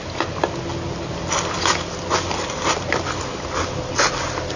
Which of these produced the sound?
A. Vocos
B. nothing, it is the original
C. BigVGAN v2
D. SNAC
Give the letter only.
B